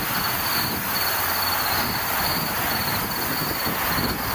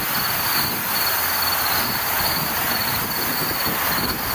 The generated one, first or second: second